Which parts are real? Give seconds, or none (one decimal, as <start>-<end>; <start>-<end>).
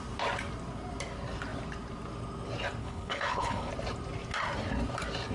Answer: 0.0-2.8; 3.7-5.3